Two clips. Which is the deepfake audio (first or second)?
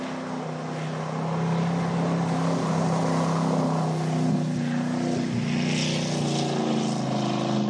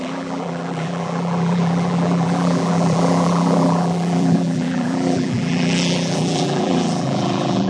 second